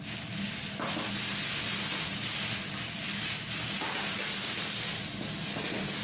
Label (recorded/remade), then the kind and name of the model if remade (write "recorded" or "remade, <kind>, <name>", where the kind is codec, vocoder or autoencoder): recorded